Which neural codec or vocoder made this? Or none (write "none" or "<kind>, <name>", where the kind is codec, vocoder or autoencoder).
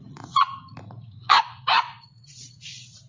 vocoder, Vocos